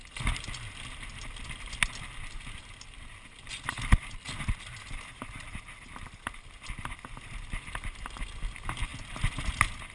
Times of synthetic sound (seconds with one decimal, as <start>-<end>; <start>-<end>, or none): none